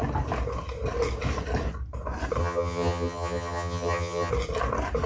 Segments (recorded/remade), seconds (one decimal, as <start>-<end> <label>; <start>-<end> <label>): 0.0-2.4 recorded; 2.4-4.3 remade; 4.3-5.1 recorded